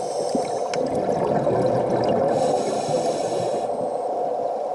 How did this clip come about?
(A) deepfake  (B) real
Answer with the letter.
B